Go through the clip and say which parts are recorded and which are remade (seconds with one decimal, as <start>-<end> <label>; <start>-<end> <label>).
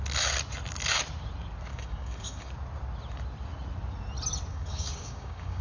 0.0-1.7 recorded; 1.7-2.5 remade; 2.5-4.5 recorded; 4.5-5.6 remade